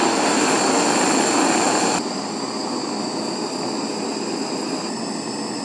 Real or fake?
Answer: real